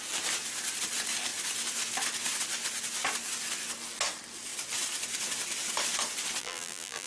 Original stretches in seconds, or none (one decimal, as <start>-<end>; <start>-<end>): 0.0-6.4